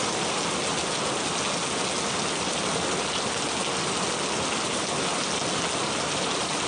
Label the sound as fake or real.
real